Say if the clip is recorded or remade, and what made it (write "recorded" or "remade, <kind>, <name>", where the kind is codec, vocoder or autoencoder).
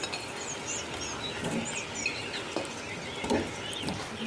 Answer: recorded